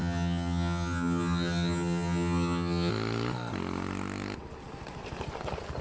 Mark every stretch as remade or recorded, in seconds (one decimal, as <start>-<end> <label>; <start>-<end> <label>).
0.0-2.9 remade; 2.9-5.8 recorded